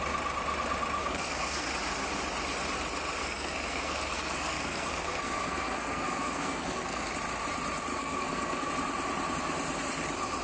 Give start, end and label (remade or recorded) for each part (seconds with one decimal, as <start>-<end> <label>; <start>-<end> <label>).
0.0-1.0 recorded; 1.0-1.7 remade; 1.7-3.2 recorded; 3.2-7.1 remade; 7.1-7.9 recorded; 7.9-8.7 remade; 8.7-10.4 recorded